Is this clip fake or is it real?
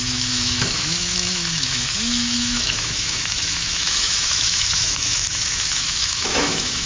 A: fake